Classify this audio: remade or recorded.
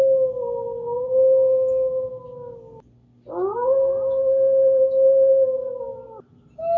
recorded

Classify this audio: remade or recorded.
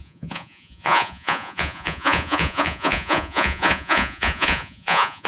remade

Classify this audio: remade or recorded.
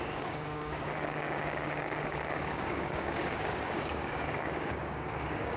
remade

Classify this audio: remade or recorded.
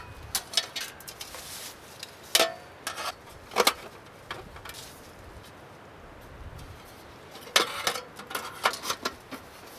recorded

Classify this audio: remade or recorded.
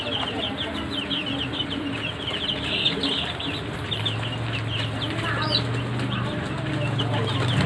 recorded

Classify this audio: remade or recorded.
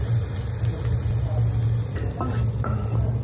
recorded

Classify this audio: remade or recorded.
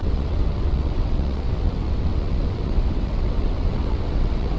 remade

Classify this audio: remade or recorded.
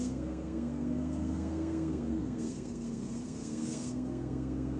remade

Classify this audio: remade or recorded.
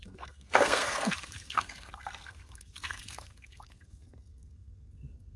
remade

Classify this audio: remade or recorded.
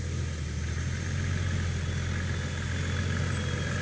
recorded